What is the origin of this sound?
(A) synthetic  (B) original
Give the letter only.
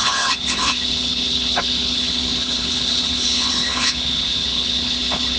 A